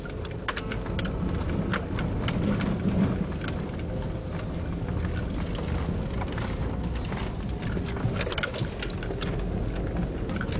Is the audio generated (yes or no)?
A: no